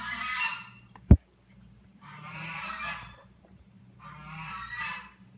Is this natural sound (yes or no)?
no